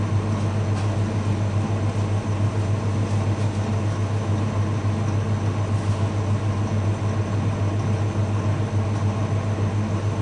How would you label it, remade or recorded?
recorded